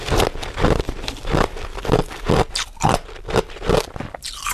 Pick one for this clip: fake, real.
real